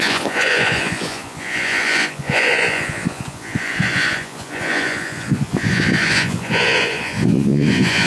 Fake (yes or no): yes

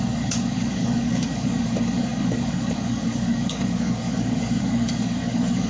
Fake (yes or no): yes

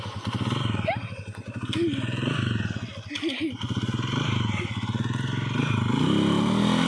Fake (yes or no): no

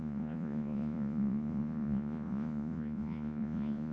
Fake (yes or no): yes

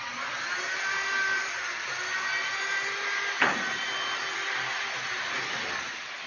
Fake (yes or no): no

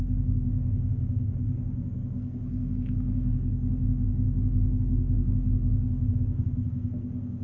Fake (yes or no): yes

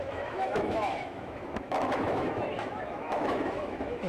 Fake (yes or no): yes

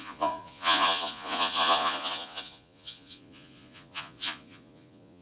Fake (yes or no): yes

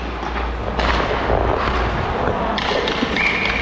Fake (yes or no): no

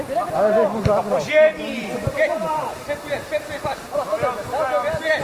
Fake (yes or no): no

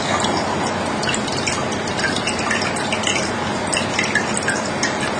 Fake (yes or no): no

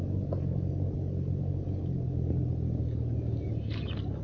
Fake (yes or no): no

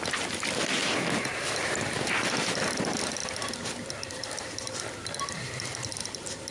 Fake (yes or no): no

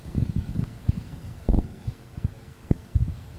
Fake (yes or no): yes